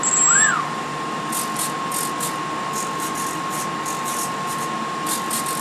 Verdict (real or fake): real